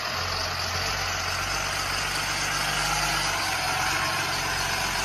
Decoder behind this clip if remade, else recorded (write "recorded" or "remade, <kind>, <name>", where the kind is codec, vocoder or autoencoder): recorded